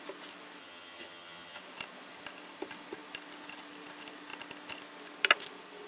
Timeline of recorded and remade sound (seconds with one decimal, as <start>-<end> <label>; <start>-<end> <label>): 0.0-0.6 recorded; 0.6-1.6 remade; 1.6-5.9 recorded